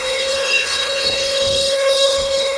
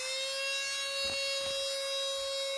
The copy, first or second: first